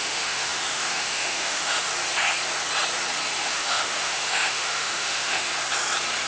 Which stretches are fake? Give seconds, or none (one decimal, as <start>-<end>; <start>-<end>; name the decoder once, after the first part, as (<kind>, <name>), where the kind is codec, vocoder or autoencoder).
0.0-1.9 (autoencoder, DAC-VAE); 3.4-5.5